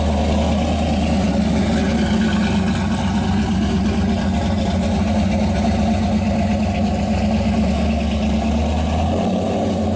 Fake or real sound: real